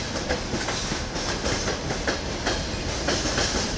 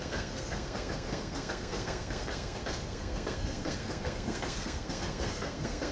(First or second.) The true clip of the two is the first